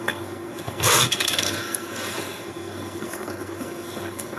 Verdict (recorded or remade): remade